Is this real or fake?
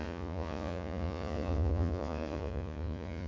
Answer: fake